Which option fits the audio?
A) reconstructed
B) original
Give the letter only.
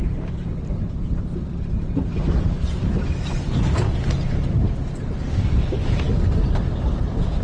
B